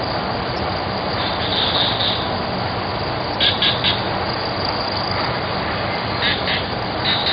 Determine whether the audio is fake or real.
real